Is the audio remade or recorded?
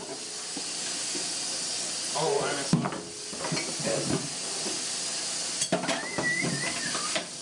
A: recorded